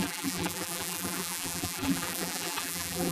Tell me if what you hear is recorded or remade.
remade